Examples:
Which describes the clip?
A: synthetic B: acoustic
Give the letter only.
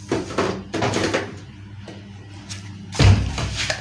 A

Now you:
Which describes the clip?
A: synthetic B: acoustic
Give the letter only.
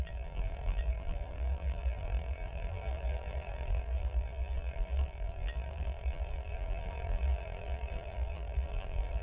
A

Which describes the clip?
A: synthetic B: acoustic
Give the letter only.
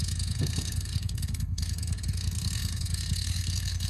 A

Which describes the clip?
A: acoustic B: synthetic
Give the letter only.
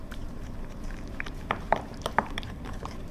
B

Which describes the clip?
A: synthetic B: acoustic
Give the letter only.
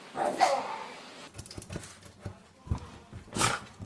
B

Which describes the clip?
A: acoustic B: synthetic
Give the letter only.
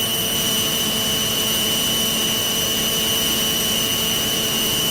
B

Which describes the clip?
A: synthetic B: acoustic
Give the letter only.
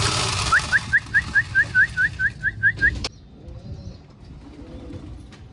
B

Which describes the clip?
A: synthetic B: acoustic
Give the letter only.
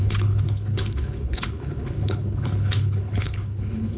A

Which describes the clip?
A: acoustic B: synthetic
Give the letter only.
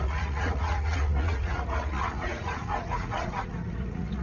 B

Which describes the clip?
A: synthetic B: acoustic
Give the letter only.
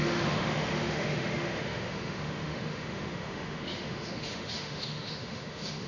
A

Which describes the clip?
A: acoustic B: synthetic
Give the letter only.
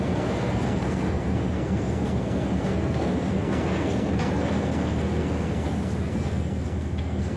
B